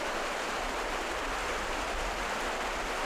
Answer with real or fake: real